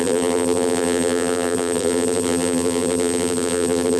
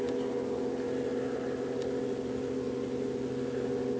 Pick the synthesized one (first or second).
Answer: first